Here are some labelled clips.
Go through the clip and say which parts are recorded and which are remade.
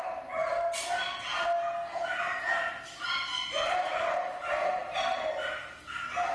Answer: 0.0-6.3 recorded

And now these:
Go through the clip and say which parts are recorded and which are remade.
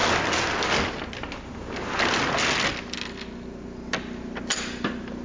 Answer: 0.0-5.2 recorded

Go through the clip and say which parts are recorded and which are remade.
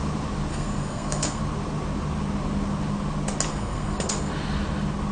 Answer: 0.0-0.5 recorded; 0.5-1.4 remade; 1.4-3.5 recorded; 3.5-4.3 remade; 4.3-5.1 recorded